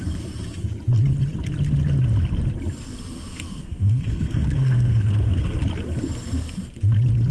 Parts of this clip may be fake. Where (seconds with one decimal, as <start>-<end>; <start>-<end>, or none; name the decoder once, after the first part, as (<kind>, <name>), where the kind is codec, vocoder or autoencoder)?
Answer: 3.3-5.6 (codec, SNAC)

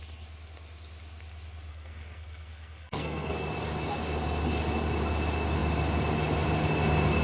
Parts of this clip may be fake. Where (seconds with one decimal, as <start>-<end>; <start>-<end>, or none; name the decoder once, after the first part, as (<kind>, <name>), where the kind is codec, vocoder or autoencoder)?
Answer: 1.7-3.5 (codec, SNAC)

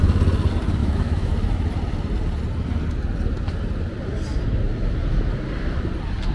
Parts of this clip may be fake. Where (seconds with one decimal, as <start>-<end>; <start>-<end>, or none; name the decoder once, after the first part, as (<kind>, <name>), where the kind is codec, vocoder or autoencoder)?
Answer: 0.8-1.3 (autoencoder, DAC-VAE)

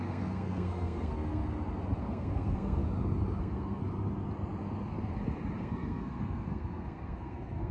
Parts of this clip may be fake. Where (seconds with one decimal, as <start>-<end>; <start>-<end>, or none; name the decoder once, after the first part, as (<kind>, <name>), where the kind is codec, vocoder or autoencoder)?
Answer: 0.0-1.4 (codec, SNAC); 2.0-2.8; 3.4-3.8; 5.6-7.7